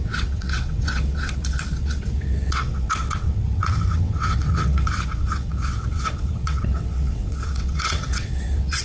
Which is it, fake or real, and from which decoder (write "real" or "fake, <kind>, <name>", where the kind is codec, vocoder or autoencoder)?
fake, vocoder, WaveNeXt